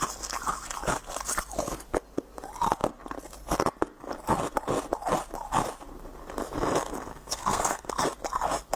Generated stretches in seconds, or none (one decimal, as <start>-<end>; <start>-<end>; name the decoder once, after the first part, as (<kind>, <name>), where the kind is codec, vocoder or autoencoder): 7.1-7.9 (codec, SNAC)